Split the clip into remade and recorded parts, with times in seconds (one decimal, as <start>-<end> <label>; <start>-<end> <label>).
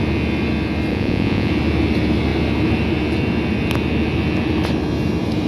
0.0-0.9 recorded; 0.9-1.5 remade; 1.5-5.5 recorded